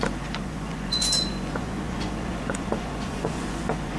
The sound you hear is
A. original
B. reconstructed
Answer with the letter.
B